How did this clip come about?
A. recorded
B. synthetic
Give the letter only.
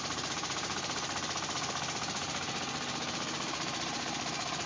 B